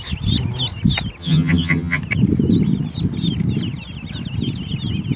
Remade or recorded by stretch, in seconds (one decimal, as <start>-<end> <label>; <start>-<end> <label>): 0.0-1.2 recorded; 1.2-2.0 remade; 2.0-5.2 recorded